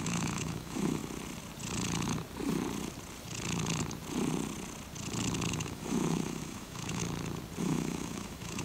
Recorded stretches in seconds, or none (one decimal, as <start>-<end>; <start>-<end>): 1.0-5.5; 7.0-7.6